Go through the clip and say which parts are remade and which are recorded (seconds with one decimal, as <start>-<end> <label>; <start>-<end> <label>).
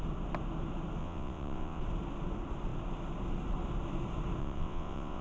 0.0-1.0 recorded; 1.0-1.8 remade; 1.8-4.4 recorded; 4.4-5.2 remade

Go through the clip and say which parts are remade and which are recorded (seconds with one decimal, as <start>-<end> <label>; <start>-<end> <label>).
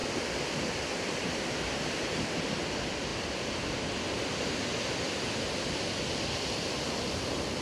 0.0-7.6 recorded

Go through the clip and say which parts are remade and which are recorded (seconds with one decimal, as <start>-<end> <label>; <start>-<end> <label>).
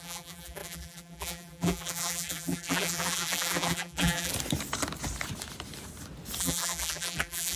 0.0-4.3 remade; 4.3-6.4 recorded; 6.4-7.6 remade